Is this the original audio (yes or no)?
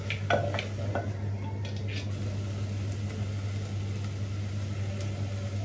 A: yes